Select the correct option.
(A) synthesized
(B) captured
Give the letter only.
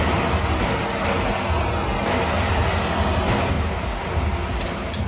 B